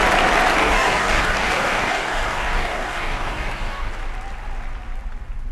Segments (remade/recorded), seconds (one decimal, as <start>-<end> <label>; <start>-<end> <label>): 0.0-0.6 recorded; 0.6-3.9 remade; 3.9-5.5 recorded